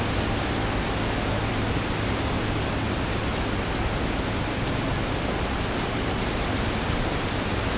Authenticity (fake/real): real